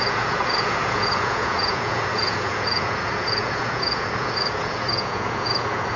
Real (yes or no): no